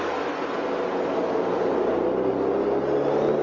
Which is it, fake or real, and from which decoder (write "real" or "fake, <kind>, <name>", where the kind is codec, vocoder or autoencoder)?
real